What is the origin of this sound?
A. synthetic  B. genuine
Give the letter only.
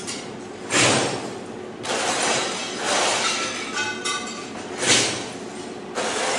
B